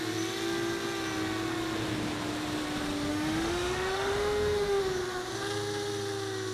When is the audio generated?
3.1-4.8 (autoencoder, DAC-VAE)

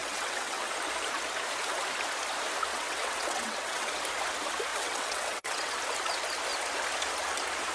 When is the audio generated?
0.0-0.7 (vocoder, WaveNeXt); 2.7-3.9; 4.7-5.7

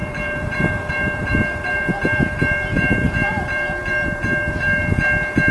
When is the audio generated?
0.0-4.8 (vocoder, BigVGAN v2)

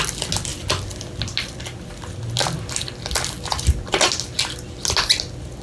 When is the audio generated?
none

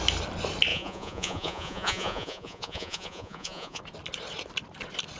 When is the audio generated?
0.7-3.8 (vocoder, Vocos)

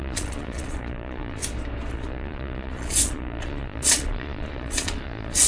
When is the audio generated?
0.0-1.4 (vocoder, Vocos); 1.9-5.5

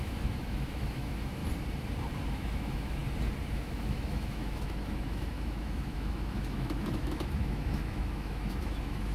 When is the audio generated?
0.0-1.4 (autoencoder, DAC-VAE); 2.3-3.0; 3.5-9.1

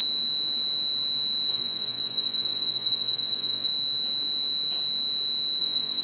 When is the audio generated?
1.5-3.7 (vocoder, Vocos); 5.6-6.0